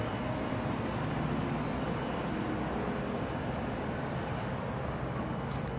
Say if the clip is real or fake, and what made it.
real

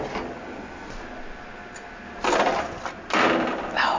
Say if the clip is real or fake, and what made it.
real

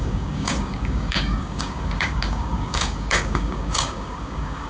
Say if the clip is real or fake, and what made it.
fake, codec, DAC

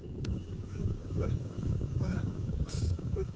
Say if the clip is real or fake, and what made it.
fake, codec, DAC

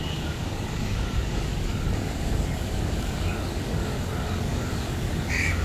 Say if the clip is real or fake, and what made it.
fake, codec, DAC